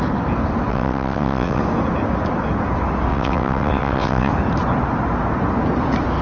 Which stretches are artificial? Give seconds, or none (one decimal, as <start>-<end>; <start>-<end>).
0.7-1.6; 3.1-4.3